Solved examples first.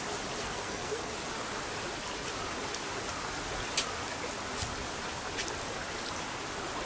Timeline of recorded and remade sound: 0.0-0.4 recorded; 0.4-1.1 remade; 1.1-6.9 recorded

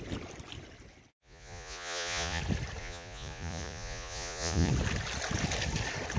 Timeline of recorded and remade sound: 0.0-1.1 recorded; 1.1-2.4 remade; 2.4-2.8 recorded; 2.8-4.7 remade; 4.7-6.2 recorded

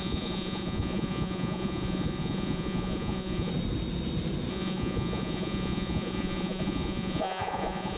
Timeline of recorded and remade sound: 0.0-3.5 remade; 3.5-4.5 recorded; 4.5-8.0 remade

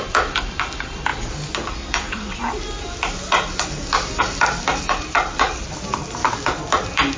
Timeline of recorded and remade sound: 0.0-1.1 remade; 1.1-4.2 recorded; 4.2-7.2 remade

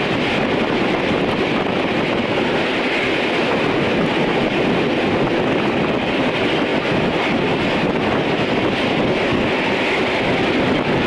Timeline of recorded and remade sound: 0.0-11.1 recorded